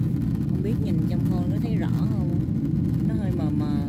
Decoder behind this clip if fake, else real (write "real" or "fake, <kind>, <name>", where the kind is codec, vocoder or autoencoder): real